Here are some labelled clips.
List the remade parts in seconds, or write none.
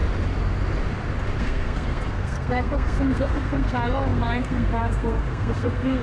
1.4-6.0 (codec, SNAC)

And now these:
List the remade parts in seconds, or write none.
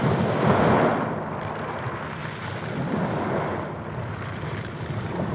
none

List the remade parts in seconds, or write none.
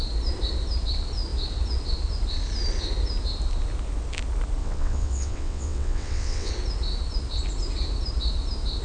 4.6-6.5 (vocoder, WaveNeXt)